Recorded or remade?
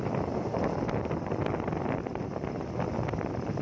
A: recorded